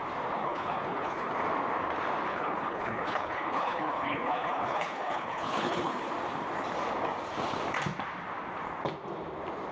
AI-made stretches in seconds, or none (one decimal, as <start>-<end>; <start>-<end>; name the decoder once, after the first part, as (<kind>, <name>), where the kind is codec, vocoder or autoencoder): 0.4-1.3 (codec, HILCodec); 2.3-6.1